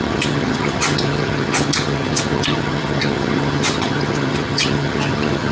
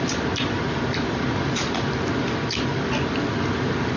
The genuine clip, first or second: second